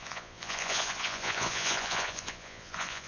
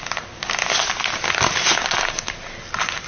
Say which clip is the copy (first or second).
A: first